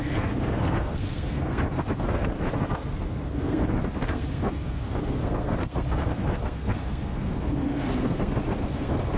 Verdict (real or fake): fake